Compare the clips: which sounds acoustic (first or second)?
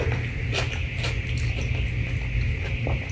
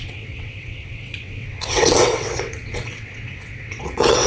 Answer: first